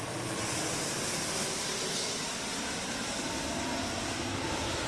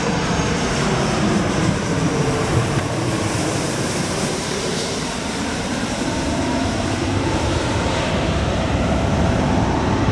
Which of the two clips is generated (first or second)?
second